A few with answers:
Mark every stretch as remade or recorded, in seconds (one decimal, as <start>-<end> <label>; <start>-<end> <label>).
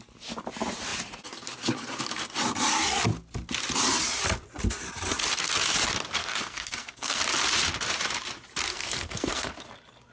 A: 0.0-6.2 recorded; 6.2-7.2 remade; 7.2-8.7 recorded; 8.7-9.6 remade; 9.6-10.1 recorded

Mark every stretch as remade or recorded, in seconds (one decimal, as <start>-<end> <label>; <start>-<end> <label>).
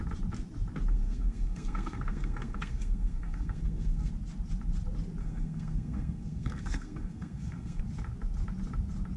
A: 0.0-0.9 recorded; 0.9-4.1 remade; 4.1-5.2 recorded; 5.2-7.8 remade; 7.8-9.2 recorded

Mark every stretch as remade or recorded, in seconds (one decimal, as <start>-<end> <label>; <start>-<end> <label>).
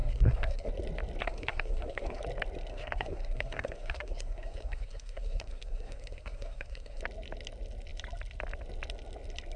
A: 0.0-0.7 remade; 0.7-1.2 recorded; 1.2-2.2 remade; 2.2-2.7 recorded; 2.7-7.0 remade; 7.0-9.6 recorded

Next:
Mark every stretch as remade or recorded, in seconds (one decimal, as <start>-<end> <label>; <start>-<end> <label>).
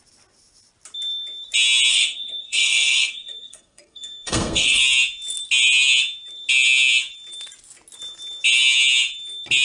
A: 0.0-1.9 recorded; 1.9-4.8 remade; 4.8-9.6 recorded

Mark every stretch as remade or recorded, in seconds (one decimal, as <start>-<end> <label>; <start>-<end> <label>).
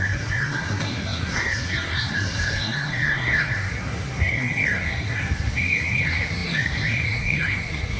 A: 0.0-8.0 remade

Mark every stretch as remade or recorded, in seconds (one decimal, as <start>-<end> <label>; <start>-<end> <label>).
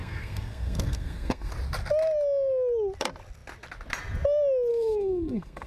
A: 0.0-1.5 remade; 1.5-4.7 recorded; 4.7-5.7 remade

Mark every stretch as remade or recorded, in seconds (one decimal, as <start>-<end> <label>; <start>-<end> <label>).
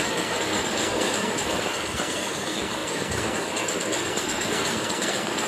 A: 0.0-5.5 remade